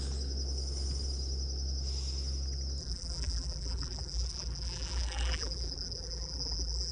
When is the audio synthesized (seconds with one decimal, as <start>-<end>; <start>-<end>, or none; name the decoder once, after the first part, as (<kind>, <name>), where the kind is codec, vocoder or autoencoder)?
2.8-6.9 (vocoder, BigVGAN v2)